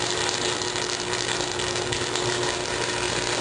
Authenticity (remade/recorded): recorded